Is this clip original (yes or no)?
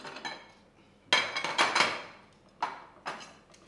yes